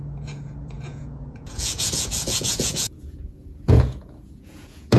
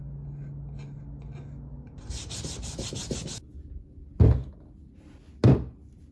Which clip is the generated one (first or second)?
first